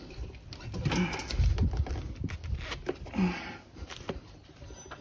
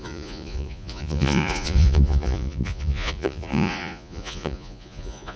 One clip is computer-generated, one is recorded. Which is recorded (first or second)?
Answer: first